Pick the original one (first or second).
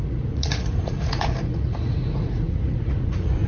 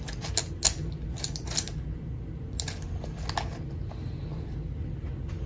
second